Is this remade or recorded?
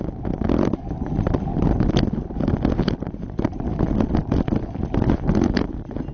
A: recorded